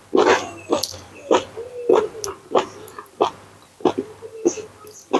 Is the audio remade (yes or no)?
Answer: no